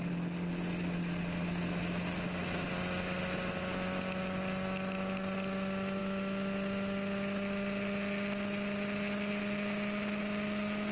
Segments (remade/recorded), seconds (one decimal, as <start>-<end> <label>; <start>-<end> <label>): 0.0-10.9 recorded